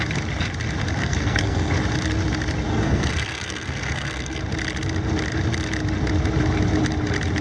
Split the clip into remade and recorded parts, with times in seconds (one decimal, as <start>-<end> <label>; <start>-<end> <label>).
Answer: 0.0-1.0 recorded; 1.0-1.7 remade; 1.7-2.7 recorded; 2.7-4.4 remade; 4.4-7.4 recorded